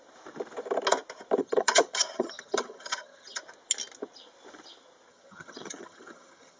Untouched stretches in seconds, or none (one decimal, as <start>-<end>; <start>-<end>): 0.0-1.4; 3.4-5.1